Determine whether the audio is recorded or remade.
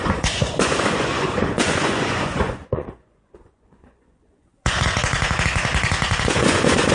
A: remade